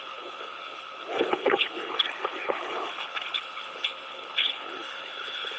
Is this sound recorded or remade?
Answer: remade